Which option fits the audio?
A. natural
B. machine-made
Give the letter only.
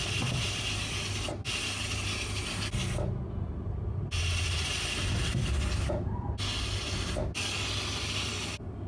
A